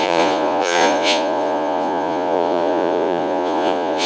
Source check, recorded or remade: remade